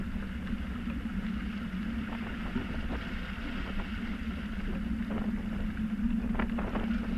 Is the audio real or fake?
real